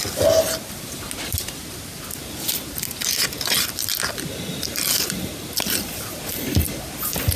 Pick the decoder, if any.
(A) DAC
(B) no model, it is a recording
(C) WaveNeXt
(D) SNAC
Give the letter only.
B